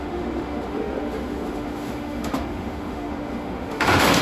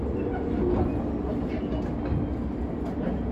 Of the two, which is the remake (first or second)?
first